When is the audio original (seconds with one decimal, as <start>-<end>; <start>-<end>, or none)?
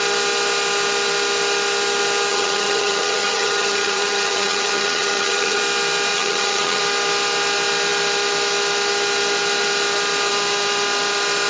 0.0-2.3; 5.6-6.1; 6.8-11.5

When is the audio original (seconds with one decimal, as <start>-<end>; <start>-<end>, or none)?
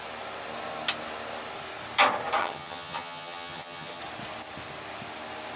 0.0-2.4; 4.0-5.6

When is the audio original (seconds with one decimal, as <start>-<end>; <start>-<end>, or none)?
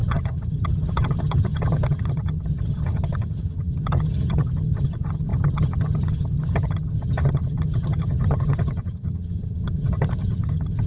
none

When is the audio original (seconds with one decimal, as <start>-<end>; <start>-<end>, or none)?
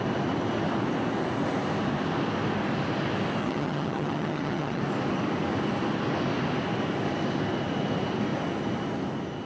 0.0-3.4; 4.8-9.5